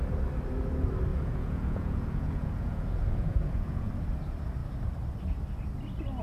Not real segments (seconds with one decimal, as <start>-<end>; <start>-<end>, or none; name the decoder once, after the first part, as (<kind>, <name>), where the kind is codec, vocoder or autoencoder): 1.1-3.9 (vocoder, Vocos)